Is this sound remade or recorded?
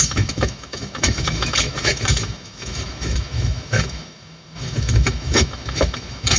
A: remade